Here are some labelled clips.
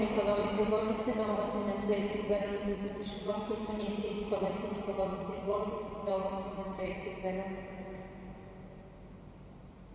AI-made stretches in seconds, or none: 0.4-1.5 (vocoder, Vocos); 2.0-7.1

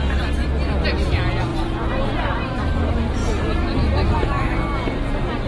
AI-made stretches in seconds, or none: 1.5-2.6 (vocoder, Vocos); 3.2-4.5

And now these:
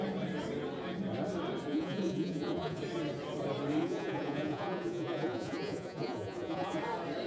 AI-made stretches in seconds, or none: 1.7-2.8 (vocoder, Vocos); 3.8-6.8

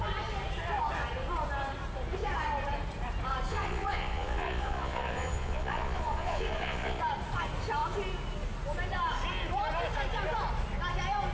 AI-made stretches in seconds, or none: 3.5-7.0 (vocoder, Vocos)